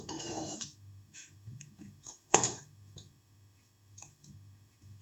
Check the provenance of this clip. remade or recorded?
remade